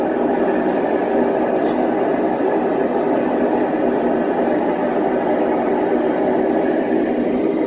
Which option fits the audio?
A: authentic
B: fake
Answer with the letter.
A